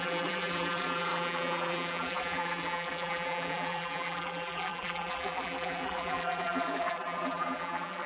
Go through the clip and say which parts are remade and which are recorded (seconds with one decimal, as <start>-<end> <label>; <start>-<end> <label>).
0.0-8.1 remade